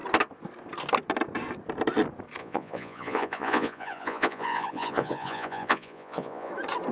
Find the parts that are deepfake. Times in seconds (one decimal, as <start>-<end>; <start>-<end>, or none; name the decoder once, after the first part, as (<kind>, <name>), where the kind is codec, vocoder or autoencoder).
2.4-6.5 (vocoder, Vocos)